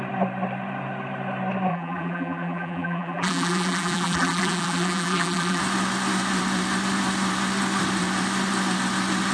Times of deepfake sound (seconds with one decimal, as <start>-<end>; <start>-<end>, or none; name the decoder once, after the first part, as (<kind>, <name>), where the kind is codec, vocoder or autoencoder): 1.7-5.6 (vocoder, BigVGAN v2)